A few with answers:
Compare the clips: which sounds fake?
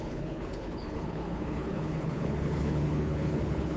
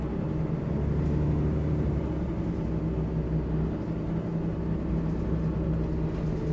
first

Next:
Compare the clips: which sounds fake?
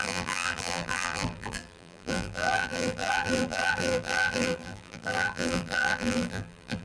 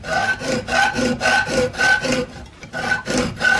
first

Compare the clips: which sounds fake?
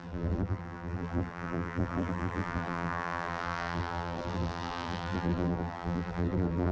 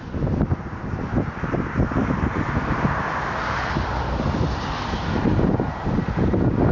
first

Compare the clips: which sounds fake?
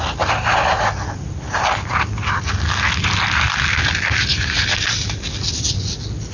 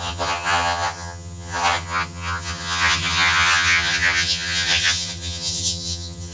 second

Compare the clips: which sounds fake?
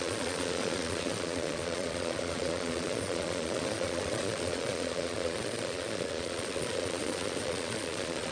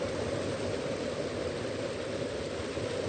first